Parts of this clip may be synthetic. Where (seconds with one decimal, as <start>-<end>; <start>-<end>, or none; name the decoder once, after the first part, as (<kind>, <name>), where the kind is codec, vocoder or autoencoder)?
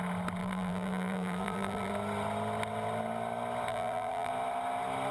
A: 0.4-1.9 (vocoder, BigVGAN v2); 3.7-4.3